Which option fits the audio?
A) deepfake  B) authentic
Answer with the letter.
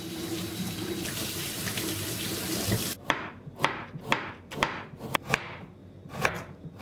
A